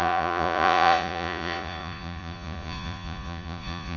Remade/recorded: remade